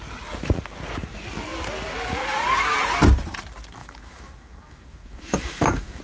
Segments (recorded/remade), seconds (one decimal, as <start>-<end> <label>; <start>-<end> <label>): 0.0-3.8 recorded; 3.8-6.0 remade